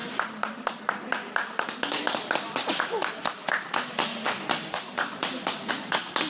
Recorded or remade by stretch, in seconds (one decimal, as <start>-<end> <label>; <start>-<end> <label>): 0.0-0.8 remade; 0.8-4.1 recorded; 4.1-5.7 remade; 5.7-6.3 recorded